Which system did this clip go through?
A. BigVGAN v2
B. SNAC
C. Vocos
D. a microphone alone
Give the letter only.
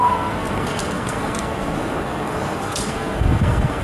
B